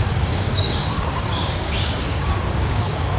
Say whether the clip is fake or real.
fake